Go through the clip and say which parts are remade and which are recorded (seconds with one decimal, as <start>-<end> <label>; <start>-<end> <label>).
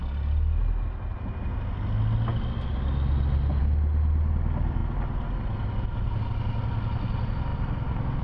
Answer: 0.0-8.2 recorded